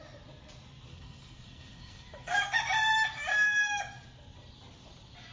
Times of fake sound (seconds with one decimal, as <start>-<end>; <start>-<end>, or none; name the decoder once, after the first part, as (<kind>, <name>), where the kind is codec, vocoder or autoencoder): 0.9-2.4 (codec, SNAC); 3.3-3.8